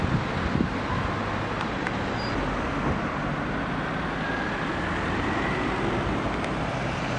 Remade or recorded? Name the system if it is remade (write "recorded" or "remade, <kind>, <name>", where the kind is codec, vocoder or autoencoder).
recorded